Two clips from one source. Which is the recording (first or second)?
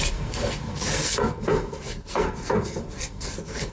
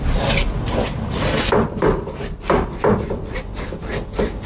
second